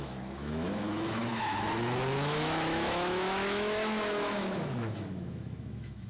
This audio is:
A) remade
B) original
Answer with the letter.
A